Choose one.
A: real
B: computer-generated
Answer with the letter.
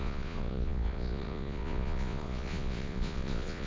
B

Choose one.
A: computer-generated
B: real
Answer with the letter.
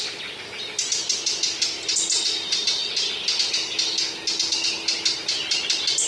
B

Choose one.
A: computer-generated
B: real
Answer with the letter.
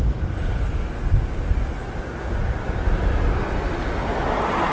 B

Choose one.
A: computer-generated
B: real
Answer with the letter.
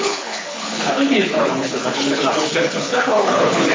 A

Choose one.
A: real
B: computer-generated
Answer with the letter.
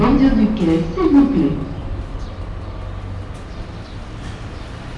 A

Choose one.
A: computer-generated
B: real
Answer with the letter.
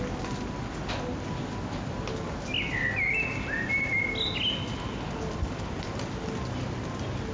B